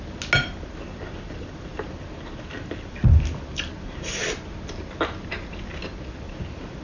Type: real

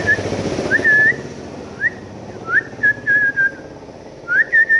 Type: real